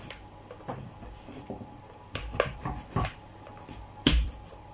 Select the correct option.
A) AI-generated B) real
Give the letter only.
A